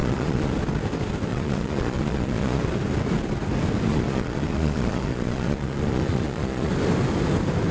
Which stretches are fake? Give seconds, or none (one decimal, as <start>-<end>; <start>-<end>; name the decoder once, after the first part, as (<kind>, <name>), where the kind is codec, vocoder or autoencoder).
0.0-0.5 (vocoder, Vocos); 1.3-2.6; 3.9-6.7